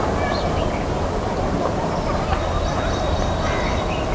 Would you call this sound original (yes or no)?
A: yes